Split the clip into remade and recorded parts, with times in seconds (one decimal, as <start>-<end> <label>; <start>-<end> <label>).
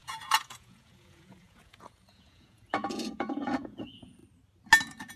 0.0-4.2 remade; 4.2-5.2 recorded